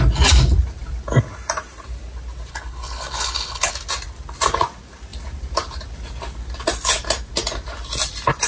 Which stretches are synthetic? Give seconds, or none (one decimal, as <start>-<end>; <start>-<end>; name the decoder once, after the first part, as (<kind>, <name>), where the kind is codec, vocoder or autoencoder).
2.5-3.7 (codec, HILCodec)